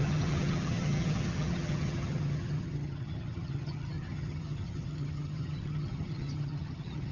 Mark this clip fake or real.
fake